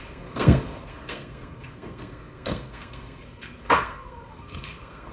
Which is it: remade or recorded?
remade